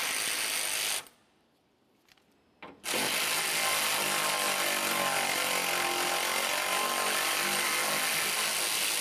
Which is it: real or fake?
real